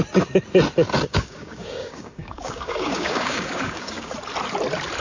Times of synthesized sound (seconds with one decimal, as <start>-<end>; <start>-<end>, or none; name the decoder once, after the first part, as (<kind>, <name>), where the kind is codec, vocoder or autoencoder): 1.1-4.1 (codec, DAC)